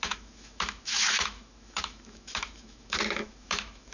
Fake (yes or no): yes